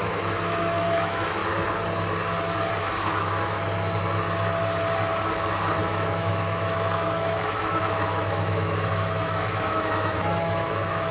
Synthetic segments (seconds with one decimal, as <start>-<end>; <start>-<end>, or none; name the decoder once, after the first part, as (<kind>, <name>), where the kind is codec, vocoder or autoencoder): 0.0-1.4 (autoencoder, DAC-VAE); 2.8-3.6; 5.8-11.1